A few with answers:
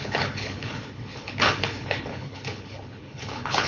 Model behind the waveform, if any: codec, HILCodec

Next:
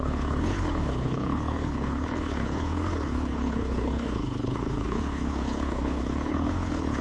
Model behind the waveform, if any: codec, HILCodec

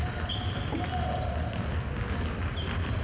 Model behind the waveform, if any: none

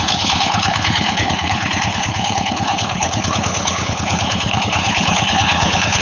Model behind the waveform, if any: codec, HILCodec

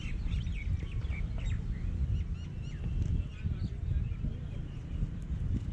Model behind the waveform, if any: none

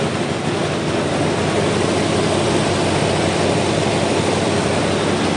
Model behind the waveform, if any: none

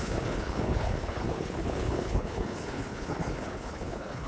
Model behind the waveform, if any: codec, HILCodec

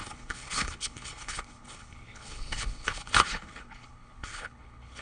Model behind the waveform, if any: codec, HILCodec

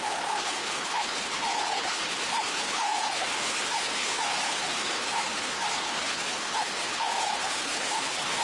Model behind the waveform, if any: codec, HILCodec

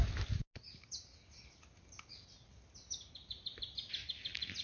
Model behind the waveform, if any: none